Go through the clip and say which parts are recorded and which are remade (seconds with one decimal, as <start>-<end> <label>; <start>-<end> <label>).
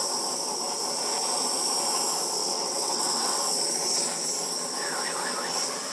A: 0.0-2.4 recorded; 2.4-3.4 remade; 3.4-5.9 recorded